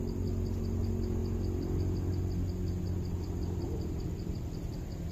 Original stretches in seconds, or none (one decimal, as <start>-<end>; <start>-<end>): 0.0-5.1